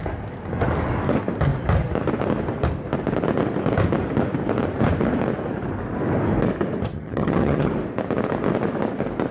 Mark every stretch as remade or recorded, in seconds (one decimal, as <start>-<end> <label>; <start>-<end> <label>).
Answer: 0.0-6.9 recorded; 6.9-7.7 remade; 7.7-9.3 recorded